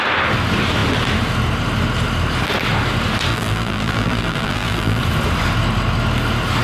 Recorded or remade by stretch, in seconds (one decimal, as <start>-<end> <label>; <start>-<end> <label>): 0.0-3.3 recorded; 3.3-5.0 remade; 5.0-6.6 recorded